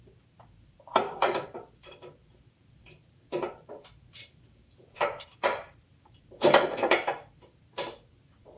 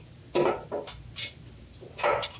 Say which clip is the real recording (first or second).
second